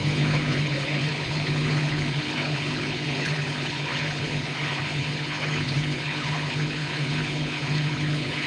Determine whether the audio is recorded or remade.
remade